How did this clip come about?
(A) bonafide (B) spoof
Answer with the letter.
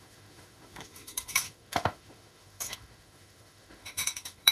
B